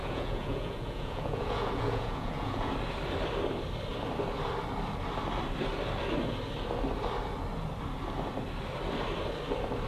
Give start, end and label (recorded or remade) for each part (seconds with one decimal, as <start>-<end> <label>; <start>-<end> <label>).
0.0-2.7 remade; 2.7-9.9 recorded